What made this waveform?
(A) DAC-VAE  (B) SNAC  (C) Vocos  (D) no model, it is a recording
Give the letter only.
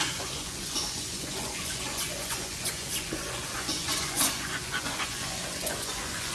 C